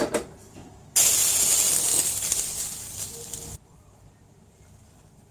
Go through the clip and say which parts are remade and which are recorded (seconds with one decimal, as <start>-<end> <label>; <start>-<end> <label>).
0.0-0.6 remade; 0.6-1.1 recorded; 1.1-1.9 remade; 1.9-5.3 recorded